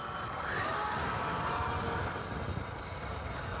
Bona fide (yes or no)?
yes